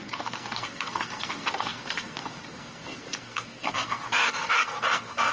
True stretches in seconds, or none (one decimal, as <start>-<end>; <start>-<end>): none